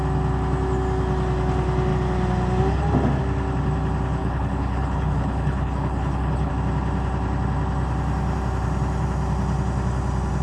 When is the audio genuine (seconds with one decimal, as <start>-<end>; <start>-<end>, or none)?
0.0-4.2; 6.5-10.4

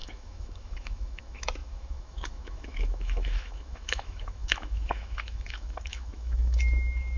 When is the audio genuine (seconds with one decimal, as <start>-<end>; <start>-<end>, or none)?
none

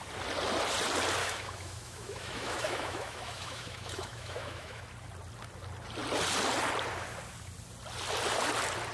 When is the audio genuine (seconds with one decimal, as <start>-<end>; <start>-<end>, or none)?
0.0-1.2; 4.8-8.9

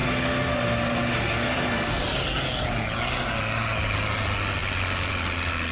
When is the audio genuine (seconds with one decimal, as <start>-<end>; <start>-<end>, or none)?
0.0-5.7

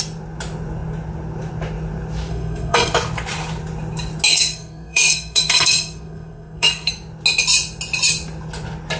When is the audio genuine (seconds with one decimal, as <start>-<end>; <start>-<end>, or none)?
0.0-2.3; 2.9-4.3; 6.9-9.0